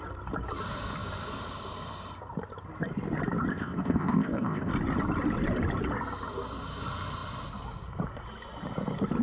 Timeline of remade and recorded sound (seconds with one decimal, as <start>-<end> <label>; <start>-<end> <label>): 0.0-3.5 recorded; 3.5-4.7 remade; 4.7-9.2 recorded